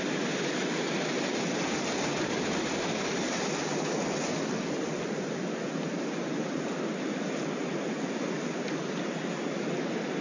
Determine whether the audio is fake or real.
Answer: real